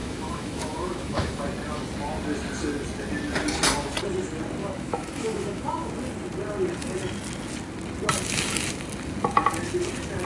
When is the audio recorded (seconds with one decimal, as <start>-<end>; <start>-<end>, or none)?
1.4-4.6; 5.9-10.3